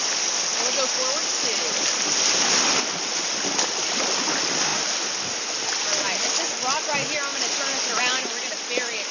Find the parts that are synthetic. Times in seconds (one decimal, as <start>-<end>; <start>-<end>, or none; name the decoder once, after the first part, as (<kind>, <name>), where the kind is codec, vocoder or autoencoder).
none